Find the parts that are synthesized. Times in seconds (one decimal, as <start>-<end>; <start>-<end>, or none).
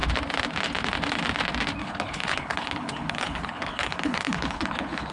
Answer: 1.8-5.1